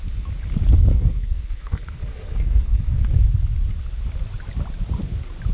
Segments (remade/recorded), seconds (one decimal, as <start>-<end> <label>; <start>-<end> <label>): 0.0-0.9 recorded; 0.9-3.3 remade; 3.3-5.5 recorded